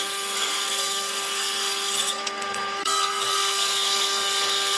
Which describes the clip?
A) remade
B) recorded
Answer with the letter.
A